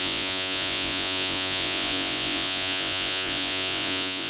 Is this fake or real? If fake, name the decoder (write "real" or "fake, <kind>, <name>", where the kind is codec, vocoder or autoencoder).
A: fake, vocoder, Vocos